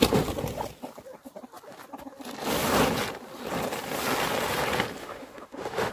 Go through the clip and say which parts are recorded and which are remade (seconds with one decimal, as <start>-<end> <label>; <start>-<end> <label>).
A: 0.0-5.0 recorded; 5.0-5.9 remade